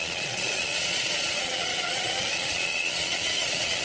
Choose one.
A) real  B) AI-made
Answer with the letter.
B